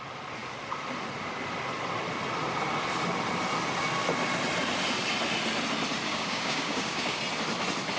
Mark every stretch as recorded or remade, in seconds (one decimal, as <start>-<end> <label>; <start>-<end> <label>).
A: 0.0-6.1 recorded; 6.1-7.2 remade; 7.2-8.0 recorded